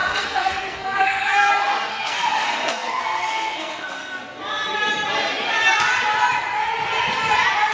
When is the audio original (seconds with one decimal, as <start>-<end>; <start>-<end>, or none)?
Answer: 1.5-1.9; 4.4-7.7